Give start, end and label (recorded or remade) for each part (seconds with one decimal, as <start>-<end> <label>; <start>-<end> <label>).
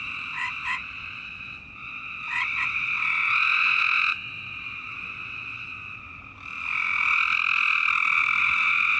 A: 0.0-6.2 remade; 6.2-8.4 recorded; 8.4-9.0 remade